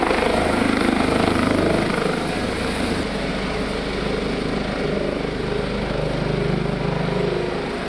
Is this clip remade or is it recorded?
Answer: recorded